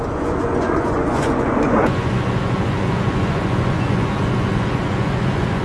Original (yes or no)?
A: no